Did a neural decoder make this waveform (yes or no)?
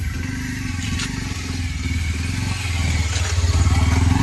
no